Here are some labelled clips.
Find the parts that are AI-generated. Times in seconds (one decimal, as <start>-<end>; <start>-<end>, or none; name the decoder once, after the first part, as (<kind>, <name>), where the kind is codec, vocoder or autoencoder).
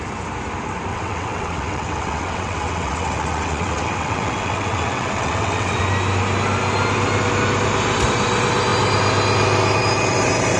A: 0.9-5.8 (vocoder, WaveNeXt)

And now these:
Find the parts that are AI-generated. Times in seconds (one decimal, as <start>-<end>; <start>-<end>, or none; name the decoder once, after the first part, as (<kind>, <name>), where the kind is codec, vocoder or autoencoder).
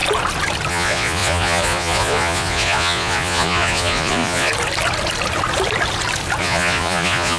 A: 0.7-4.5 (vocoder, Vocos); 6.4-7.4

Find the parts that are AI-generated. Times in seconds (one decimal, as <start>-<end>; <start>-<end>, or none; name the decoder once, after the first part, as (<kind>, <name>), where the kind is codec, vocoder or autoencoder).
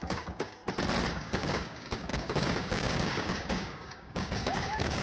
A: 0.0-0.6 (codec, DAC); 1.1-5.0